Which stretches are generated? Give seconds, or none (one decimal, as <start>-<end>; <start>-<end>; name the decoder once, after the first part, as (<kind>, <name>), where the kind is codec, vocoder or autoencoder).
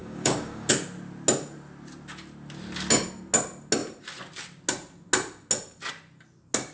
0.0-0.7 (codec, DAC)